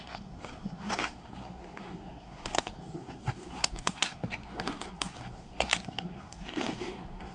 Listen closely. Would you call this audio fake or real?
fake